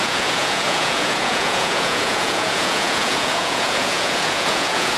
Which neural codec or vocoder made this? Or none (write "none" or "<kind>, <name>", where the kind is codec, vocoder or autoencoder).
vocoder, Vocos